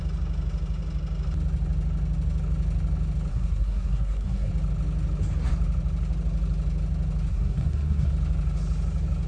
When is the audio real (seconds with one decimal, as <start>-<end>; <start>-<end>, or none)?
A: 0.0-3.3; 4.5-7.3; 8.1-9.3